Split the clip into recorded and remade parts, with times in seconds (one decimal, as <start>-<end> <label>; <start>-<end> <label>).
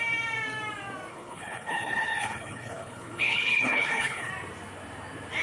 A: 0.0-1.1 recorded; 1.1-4.3 remade; 4.3-5.4 recorded